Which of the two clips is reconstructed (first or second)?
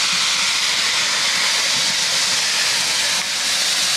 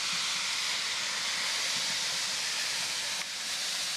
second